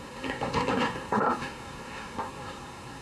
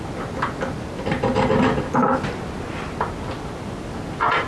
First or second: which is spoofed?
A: first